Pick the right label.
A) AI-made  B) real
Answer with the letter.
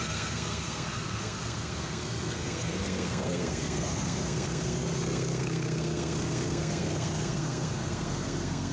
A